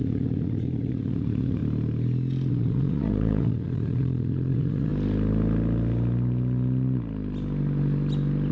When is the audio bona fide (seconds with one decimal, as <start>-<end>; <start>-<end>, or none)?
1.6-2.5; 4.9-8.5